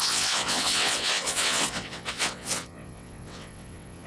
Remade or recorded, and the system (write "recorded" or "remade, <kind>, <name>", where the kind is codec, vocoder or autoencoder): remade, vocoder, WaveNeXt